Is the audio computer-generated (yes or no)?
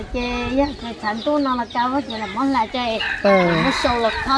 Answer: no